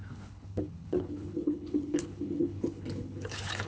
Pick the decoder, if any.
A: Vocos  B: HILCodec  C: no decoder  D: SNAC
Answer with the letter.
B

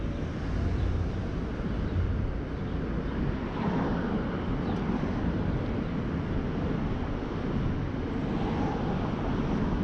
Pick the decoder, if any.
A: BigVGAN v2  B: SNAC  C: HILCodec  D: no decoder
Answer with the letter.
D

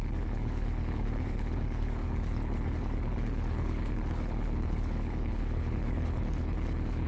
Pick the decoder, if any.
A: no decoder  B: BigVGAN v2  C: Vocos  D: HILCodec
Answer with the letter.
D